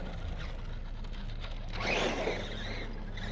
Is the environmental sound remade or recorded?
recorded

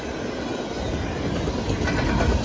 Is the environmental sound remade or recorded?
recorded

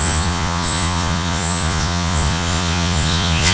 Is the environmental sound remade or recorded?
remade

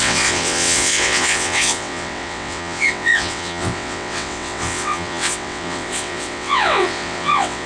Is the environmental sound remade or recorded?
remade